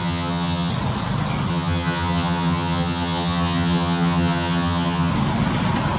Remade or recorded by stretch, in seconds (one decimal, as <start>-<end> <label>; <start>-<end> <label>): 0.0-0.7 remade; 0.7-1.5 recorded; 1.5-5.1 remade; 5.1-6.0 recorded